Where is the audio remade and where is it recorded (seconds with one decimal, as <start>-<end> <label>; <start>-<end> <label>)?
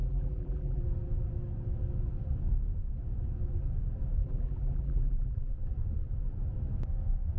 0.0-0.8 remade; 0.8-4.2 recorded; 4.2-5.5 remade; 5.5-7.4 recorded